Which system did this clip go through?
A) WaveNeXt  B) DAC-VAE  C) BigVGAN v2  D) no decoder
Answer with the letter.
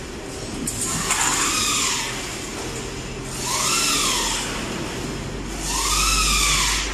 D